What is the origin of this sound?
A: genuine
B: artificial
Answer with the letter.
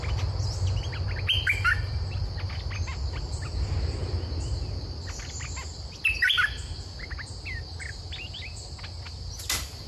A